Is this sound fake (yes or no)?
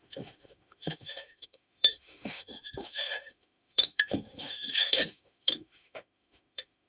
yes